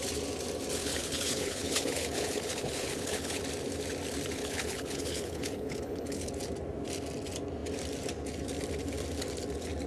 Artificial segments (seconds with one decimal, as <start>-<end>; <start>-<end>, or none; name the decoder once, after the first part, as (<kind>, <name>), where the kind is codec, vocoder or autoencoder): 0.8-3.4 (codec, HILCodec); 4.4-6.3